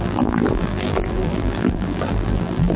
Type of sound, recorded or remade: remade